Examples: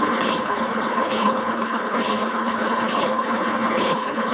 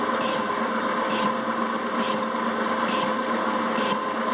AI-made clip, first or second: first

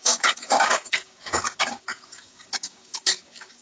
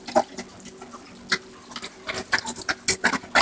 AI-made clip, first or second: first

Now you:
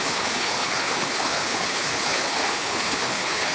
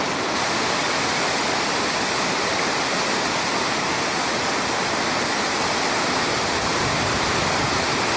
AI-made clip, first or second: first